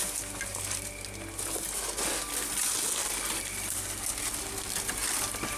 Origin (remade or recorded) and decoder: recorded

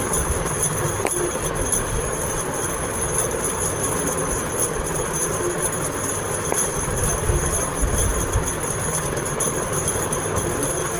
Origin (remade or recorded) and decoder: recorded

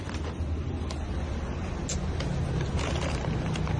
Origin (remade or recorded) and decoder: recorded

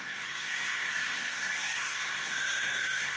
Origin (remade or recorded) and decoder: remade, codec, SNAC